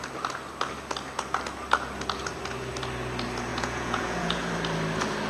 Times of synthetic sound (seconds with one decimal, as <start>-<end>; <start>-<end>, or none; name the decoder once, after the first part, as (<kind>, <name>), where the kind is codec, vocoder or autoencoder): 3.5-4.5 (vocoder, Vocos)